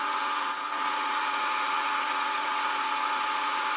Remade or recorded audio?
remade